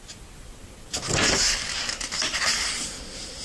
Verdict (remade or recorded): recorded